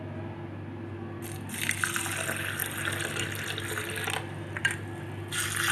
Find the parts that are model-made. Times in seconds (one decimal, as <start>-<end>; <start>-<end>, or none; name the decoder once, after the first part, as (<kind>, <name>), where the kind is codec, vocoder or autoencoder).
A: none